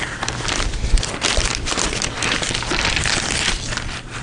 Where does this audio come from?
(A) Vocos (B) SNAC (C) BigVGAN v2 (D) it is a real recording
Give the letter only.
C